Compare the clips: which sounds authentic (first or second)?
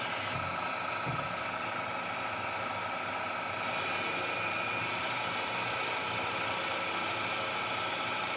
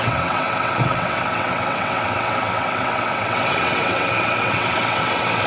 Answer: first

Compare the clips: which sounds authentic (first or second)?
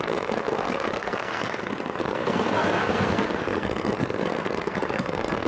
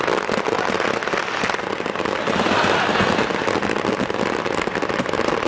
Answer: second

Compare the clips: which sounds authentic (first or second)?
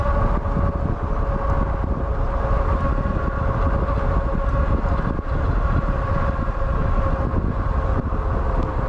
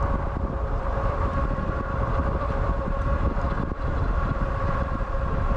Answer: first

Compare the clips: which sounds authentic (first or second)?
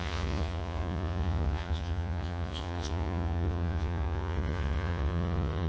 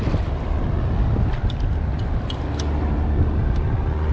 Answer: second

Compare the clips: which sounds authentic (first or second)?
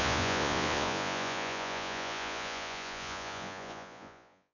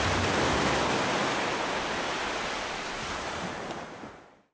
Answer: second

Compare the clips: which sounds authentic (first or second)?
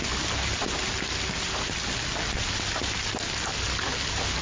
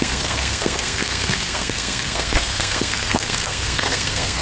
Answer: first